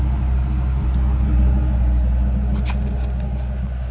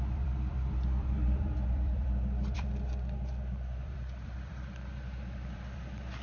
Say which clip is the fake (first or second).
second